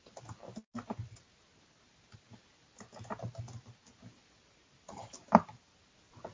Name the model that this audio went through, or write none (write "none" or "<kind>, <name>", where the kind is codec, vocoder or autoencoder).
none